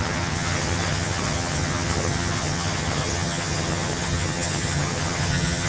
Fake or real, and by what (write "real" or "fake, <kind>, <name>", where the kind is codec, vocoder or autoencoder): fake, vocoder, HiFi-GAN